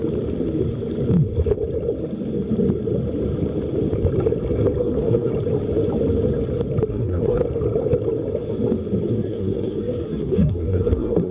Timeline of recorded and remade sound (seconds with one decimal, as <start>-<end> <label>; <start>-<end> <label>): 0.0-4.8 recorded; 4.8-5.3 remade; 5.3-6.9 recorded; 6.9-7.4 remade; 7.4-9.1 recorded; 9.1-11.3 remade